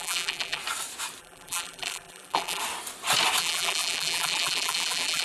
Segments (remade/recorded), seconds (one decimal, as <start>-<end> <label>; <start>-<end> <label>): 0.0-0.6 remade; 0.6-1.2 recorded; 1.2-2.6 remade; 2.6-3.4 recorded; 3.4-5.2 remade